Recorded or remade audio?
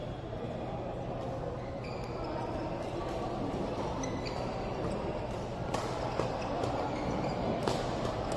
recorded